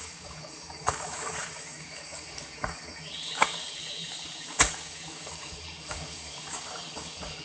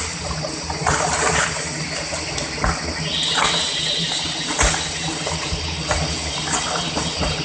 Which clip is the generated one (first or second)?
first